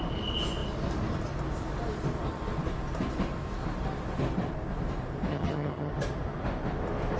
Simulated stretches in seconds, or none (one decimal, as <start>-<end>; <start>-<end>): 5.3-5.9